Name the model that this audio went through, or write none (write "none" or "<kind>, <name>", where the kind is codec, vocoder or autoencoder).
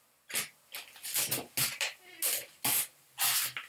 none